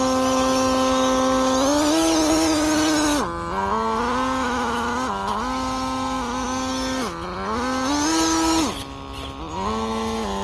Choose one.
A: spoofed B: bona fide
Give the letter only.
B